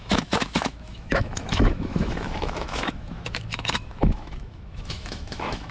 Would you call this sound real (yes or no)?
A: no